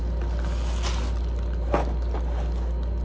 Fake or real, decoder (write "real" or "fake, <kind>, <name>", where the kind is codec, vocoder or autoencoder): real